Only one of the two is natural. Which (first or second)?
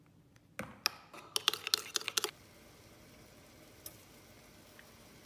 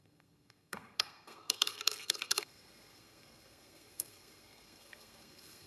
first